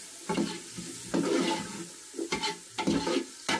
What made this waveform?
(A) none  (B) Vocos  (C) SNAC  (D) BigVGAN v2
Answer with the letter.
A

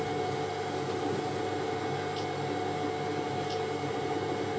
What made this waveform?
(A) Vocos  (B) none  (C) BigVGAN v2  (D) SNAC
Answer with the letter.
B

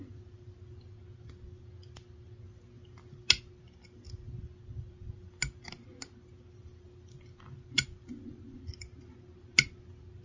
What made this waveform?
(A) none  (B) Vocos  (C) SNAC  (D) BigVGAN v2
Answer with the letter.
A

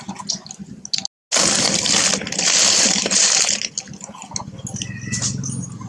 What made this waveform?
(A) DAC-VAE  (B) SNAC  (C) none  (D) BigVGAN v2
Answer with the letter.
C